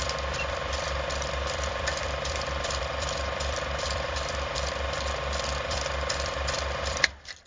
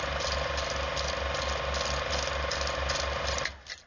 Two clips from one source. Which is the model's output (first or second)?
first